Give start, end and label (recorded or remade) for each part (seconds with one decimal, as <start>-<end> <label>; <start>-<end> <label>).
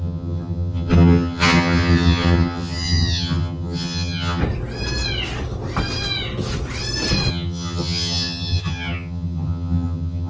0.0-4.4 remade; 4.4-7.3 recorded; 7.3-10.3 remade